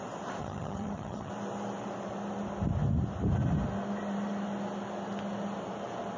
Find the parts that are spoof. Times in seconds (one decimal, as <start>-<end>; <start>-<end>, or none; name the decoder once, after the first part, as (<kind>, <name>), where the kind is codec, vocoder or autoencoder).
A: 0.4-1.3 (vocoder, HiFi-GAN)